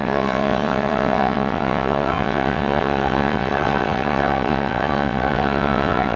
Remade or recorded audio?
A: remade